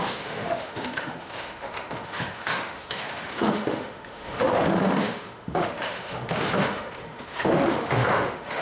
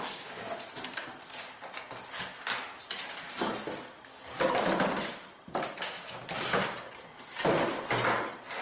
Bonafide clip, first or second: second